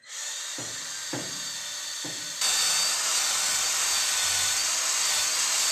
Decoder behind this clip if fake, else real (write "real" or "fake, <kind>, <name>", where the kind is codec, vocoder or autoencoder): real